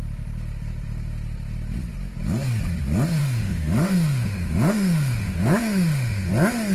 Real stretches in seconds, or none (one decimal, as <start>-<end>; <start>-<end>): 0.0-3.2; 6.3-6.7